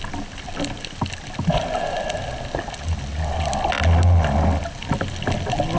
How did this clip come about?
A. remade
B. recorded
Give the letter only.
B